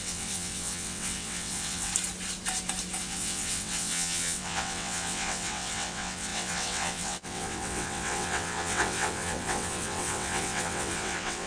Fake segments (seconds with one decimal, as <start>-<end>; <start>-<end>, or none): 0.0-1.9; 3.0-11.5